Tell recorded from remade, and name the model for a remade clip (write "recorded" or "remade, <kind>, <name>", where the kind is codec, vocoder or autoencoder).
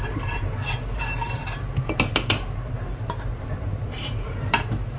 remade, vocoder, BigVGAN v2